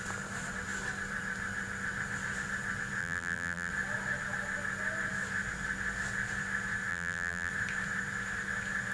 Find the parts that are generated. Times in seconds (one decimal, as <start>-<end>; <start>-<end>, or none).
3.0-3.7; 6.9-7.5